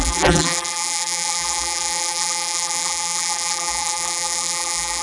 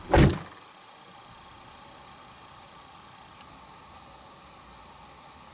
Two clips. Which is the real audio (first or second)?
second